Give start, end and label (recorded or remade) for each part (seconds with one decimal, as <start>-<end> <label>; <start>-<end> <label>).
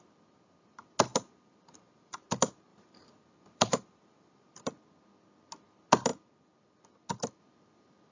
0.0-1.1 recorded; 1.1-2.2 remade; 2.2-2.7 recorded; 2.7-4.6 remade; 4.6-8.1 recorded